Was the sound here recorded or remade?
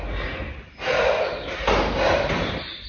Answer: recorded